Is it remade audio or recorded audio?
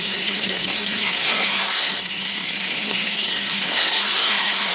remade